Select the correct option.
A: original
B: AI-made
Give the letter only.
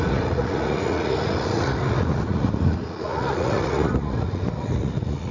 B